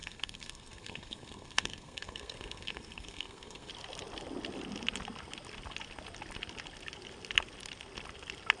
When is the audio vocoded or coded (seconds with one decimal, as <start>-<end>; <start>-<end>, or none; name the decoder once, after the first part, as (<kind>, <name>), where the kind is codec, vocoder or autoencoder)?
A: 0.0-3.7 (codec, SNAC)